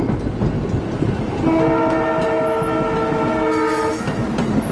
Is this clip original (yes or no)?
yes